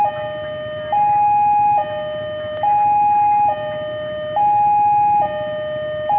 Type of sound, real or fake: real